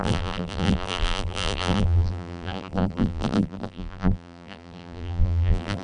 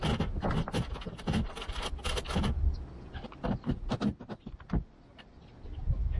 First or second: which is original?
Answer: second